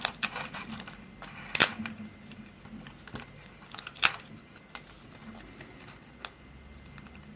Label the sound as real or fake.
real